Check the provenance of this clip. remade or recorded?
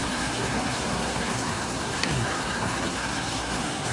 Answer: remade